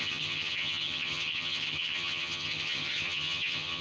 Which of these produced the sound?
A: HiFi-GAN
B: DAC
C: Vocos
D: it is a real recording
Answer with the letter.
A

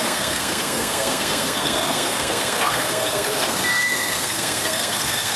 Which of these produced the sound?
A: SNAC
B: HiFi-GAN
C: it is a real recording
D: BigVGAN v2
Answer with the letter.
A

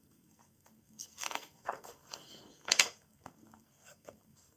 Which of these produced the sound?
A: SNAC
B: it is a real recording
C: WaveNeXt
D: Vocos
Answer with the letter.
A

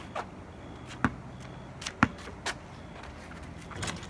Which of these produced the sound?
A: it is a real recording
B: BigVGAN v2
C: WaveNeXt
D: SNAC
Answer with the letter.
A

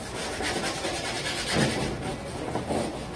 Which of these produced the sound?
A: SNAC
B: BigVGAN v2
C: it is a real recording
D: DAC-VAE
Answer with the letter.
C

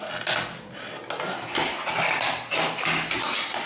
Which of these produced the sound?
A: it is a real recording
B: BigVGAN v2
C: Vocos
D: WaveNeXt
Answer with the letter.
A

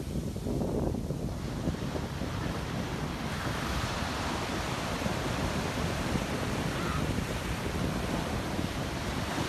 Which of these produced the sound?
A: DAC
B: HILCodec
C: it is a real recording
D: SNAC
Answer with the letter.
C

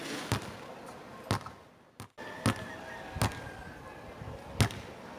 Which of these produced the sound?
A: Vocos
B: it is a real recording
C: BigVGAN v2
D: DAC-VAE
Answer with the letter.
B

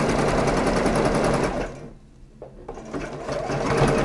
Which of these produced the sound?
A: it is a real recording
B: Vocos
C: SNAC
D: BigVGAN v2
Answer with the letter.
A